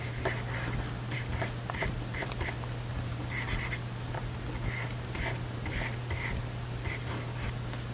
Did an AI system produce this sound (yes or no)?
no